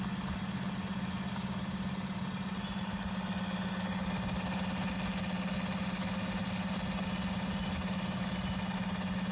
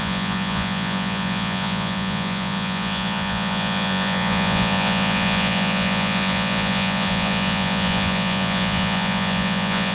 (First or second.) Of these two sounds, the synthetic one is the second